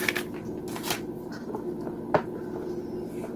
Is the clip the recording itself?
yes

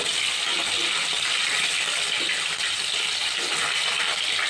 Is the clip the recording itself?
yes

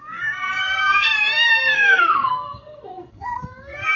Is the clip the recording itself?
no